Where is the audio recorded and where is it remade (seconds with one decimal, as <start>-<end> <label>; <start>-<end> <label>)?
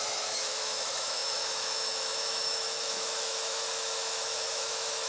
0.0-5.1 remade